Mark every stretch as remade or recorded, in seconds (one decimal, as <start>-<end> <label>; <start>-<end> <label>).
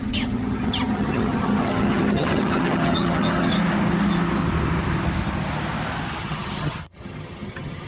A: 0.0-3.5 remade; 3.5-6.2 recorded; 6.2-7.9 remade